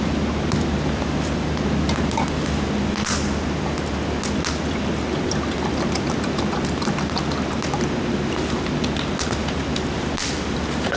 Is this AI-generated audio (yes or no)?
no